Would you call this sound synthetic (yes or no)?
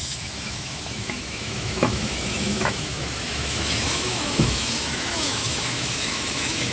yes